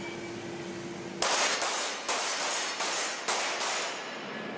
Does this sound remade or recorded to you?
recorded